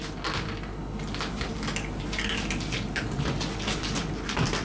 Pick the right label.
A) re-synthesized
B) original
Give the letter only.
B